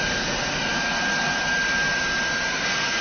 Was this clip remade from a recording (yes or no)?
no